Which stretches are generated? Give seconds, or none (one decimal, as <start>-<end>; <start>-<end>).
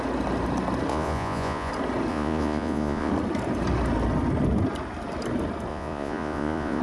0.9-1.7; 2.1-3.1; 5.7-6.8